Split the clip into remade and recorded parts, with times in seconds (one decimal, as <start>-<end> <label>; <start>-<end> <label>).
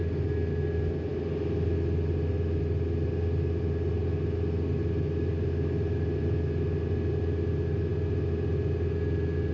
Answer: 0.0-9.5 recorded